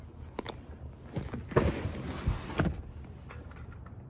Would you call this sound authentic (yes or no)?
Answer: yes